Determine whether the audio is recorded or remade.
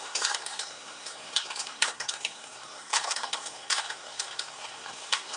remade